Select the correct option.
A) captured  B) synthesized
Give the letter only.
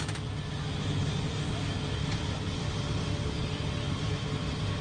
A